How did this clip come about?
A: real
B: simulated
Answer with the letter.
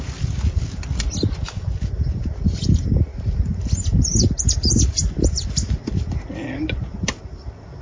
A